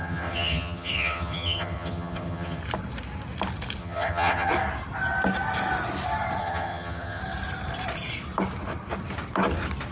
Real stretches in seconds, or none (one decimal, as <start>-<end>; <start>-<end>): 2.6-3.8; 4.5-6.4; 7.2-9.9